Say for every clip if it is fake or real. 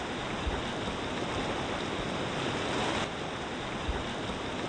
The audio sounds real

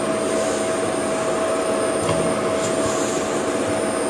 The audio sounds real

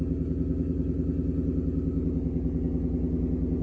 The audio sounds real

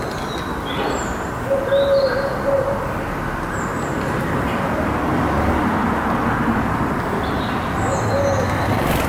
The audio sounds real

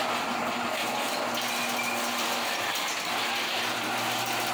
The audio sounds real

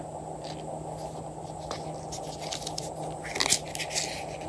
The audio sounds real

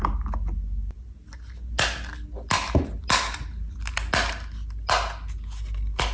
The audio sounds real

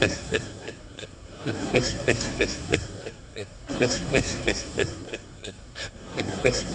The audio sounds fake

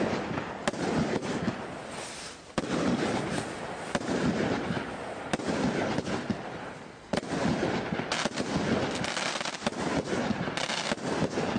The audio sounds real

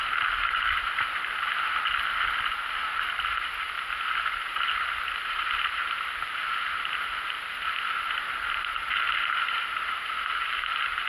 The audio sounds real